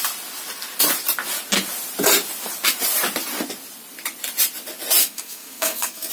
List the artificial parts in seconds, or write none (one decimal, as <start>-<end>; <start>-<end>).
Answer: 5.0-6.1